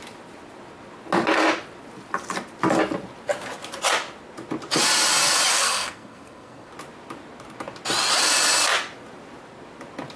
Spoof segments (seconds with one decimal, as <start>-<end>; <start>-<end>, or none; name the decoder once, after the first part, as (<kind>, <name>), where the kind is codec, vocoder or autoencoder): 5.5-6.7 (codec, SNAC)